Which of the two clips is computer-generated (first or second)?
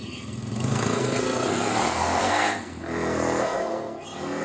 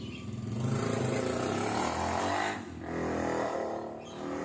first